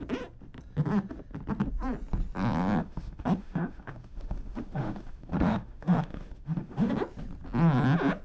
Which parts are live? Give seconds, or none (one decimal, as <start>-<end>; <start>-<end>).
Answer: 0.0-2.8; 6.9-8.2